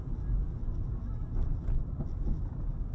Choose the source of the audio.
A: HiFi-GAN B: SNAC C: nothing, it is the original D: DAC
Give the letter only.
C